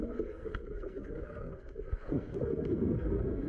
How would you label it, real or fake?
fake